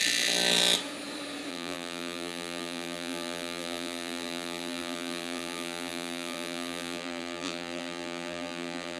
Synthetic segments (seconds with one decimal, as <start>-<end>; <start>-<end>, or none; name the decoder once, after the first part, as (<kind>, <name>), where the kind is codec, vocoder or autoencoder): 1.5-9.0 (vocoder, BigVGAN v2)